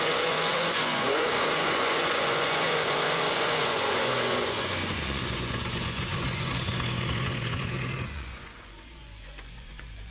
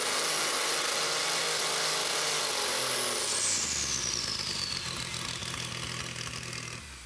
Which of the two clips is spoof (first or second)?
first